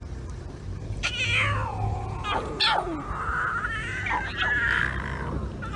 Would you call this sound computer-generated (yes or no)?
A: no